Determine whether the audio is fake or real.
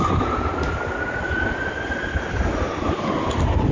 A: real